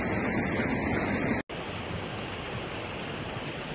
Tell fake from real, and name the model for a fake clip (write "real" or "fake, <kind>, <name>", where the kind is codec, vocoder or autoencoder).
real